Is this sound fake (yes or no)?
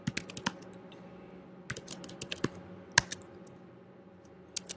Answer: no